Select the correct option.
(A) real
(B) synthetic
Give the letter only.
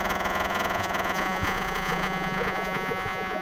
B